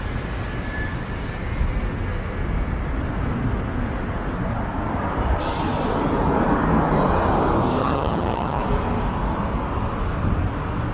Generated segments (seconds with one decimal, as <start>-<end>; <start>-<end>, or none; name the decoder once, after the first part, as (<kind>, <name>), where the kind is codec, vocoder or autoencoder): 7.8-8.6 (vocoder, HiFi-GAN)